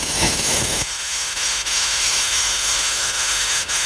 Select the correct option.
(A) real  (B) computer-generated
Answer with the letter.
B